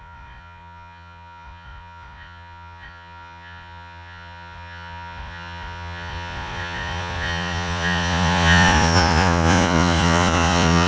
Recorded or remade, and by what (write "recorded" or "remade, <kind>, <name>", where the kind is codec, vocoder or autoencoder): remade, vocoder, Vocos